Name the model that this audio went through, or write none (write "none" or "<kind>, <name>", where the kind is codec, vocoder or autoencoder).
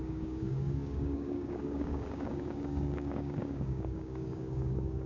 codec, DAC